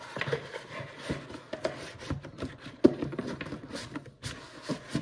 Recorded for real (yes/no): yes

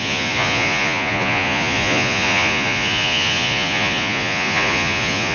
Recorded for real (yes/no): no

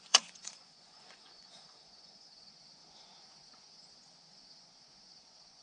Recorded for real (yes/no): no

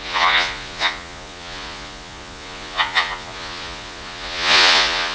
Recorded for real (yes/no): no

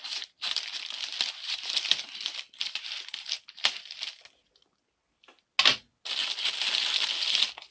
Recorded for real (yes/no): yes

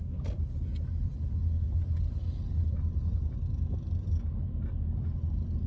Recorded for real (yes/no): yes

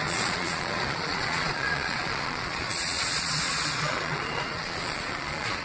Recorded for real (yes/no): no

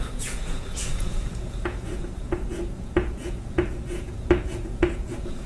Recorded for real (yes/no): no